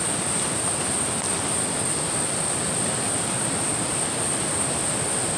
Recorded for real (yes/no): yes